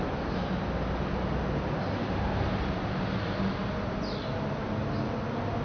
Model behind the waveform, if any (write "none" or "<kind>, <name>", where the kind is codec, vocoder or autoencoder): none